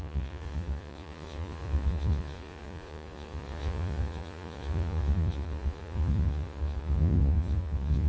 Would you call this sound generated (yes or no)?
yes